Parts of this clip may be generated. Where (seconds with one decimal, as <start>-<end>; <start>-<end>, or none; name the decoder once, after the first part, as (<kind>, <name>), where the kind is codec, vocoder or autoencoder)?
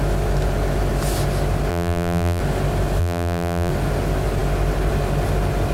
1.7-2.4 (vocoder, BigVGAN v2); 3.0-3.7